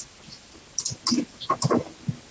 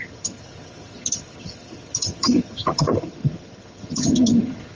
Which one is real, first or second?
first